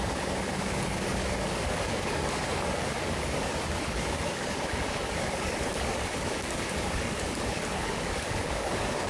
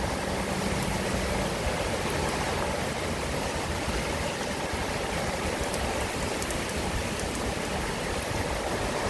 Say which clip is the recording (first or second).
second